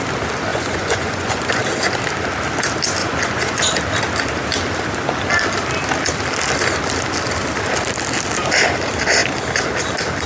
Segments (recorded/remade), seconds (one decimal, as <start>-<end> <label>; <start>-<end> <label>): 0.0-0.5 recorded; 0.5-1.6 remade; 1.6-3.0 recorded; 3.0-3.6 remade; 3.6-10.3 recorded